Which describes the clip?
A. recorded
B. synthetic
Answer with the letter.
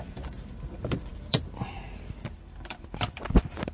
B